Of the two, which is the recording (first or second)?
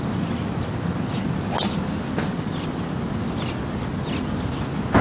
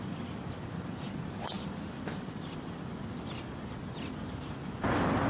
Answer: first